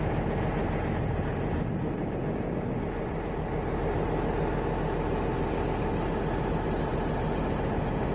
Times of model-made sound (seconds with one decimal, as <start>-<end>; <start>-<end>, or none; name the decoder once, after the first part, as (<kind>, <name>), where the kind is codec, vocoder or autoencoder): none